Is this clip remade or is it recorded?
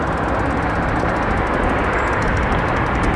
recorded